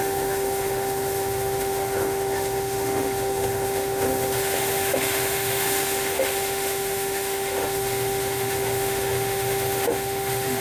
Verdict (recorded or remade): remade